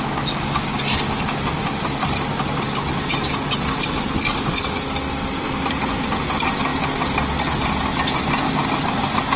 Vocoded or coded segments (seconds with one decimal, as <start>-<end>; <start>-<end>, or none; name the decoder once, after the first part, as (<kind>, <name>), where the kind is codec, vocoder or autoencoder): none